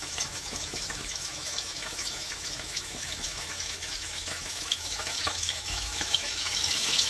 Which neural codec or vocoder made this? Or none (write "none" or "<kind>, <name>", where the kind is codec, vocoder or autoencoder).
autoencoder, DAC-VAE